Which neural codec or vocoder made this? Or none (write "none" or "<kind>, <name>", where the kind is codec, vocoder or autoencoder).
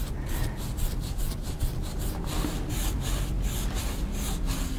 none